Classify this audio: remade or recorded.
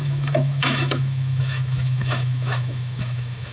remade